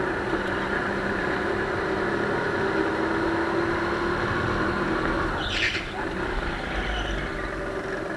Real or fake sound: real